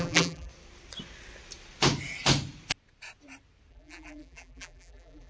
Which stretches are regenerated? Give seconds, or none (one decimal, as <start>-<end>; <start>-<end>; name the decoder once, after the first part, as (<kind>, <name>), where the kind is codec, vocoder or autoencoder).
0.0-0.5 (vocoder, BigVGAN v2); 3.7-5.3